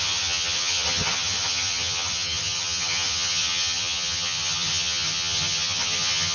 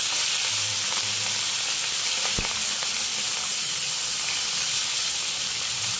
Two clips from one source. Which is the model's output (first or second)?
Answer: first